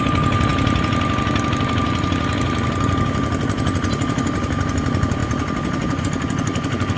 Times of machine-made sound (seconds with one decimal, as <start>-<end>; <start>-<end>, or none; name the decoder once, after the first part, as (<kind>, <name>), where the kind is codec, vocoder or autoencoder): none